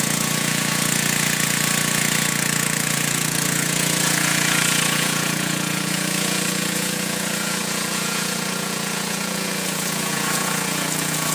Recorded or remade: remade